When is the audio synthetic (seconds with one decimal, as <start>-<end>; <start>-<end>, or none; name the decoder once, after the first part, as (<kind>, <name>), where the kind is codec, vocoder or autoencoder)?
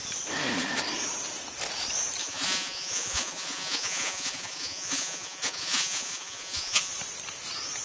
2.2-6.9 (vocoder, Vocos)